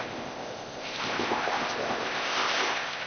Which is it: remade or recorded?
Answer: remade